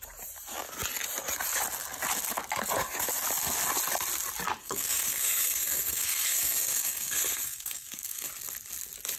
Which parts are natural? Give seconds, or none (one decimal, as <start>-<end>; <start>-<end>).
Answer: 0.0-4.6; 8.3-9.2